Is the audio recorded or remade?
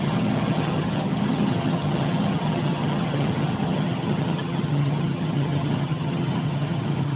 remade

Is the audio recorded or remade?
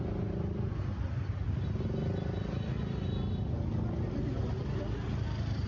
recorded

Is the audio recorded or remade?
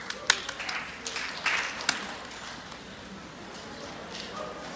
recorded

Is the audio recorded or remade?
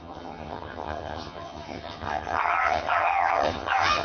remade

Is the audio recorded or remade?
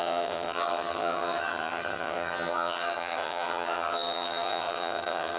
remade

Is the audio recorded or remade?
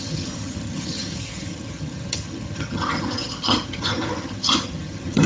remade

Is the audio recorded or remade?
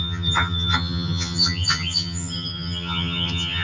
remade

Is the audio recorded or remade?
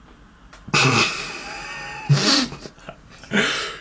recorded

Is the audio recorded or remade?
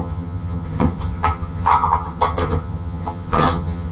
remade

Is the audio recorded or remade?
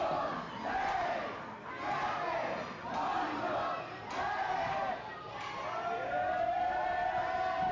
recorded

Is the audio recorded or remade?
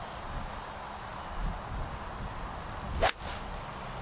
recorded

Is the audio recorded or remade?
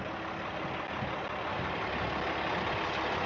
recorded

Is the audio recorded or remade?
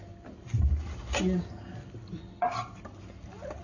recorded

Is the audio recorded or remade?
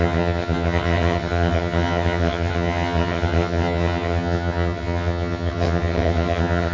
remade